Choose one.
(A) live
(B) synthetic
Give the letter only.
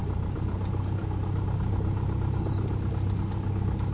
A